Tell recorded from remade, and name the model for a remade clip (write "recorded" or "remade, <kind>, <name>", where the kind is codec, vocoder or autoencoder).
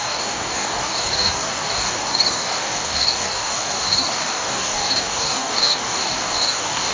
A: remade, codec, DAC